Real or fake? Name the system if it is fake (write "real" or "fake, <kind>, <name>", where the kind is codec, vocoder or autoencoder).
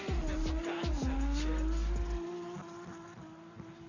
real